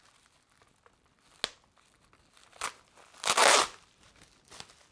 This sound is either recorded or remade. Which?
recorded